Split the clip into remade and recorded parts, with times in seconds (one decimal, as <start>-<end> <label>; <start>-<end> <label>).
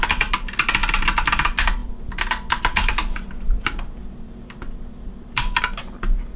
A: 0.0-0.8 recorded; 0.8-1.3 remade; 1.3-1.8 recorded; 1.8-5.6 remade; 5.6-6.4 recorded